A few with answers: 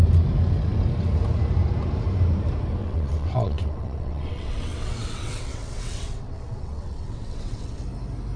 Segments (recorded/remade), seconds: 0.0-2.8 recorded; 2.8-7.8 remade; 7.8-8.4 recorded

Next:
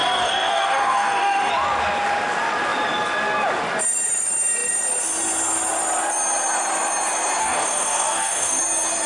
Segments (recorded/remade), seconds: 0.0-1.5 remade; 1.5-7.4 recorded; 7.4-8.6 remade; 8.6-9.1 recorded

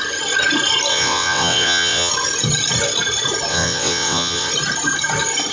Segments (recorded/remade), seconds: 0.0-0.9 recorded; 0.9-2.1 remade; 2.1-3.5 recorded; 3.5-4.5 remade; 4.5-5.5 recorded